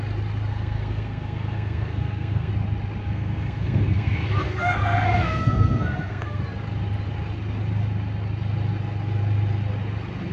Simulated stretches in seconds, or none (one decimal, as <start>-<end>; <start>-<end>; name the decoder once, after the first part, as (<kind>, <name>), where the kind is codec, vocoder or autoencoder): 0.5-2.5 (codec, SNAC); 3.0-6.4